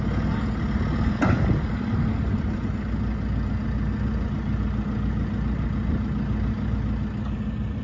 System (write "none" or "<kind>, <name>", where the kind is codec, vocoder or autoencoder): none